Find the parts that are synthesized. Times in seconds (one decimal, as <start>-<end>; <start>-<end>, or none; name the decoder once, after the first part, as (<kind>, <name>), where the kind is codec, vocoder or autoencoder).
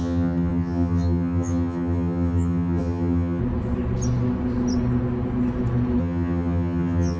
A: 0.0-3.4 (vocoder, HiFi-GAN); 6.0-7.2